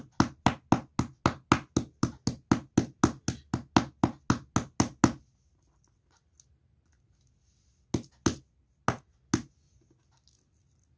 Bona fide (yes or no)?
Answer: yes